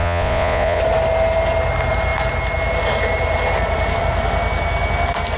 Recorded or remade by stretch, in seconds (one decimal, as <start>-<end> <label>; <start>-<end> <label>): 0.0-0.8 remade; 0.8-5.4 recorded